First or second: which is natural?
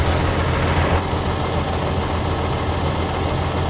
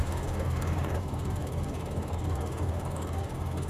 first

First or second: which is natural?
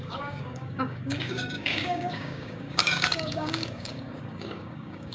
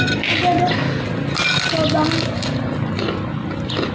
second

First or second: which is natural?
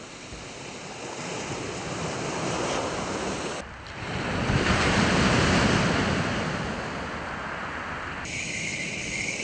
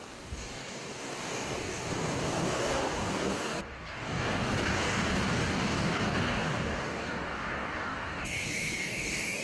first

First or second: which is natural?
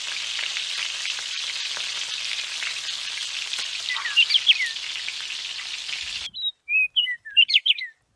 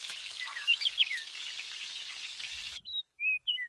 first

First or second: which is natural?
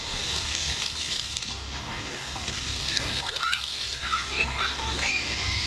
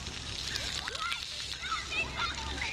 second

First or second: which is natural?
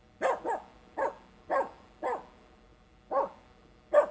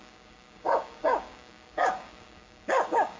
first